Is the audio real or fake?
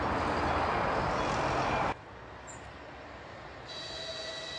real